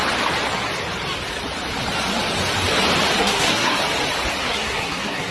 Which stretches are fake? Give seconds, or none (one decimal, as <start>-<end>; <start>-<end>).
3.2-3.8; 4.4-5.3